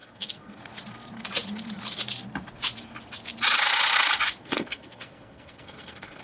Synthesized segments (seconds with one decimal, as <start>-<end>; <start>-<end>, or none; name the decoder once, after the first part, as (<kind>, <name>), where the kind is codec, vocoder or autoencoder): 0.0-0.6 (codec, SNAC); 4.4-6.2